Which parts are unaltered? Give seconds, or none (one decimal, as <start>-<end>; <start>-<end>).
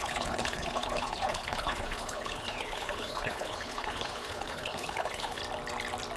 5.4-6.2